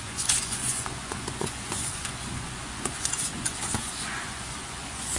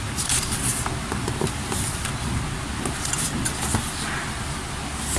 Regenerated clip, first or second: first